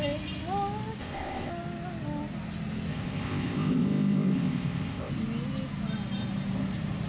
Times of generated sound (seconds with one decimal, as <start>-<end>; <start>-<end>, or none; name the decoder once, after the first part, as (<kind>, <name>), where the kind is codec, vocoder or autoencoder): 1.0-1.5 (codec, ZipCodec); 2.9-5.1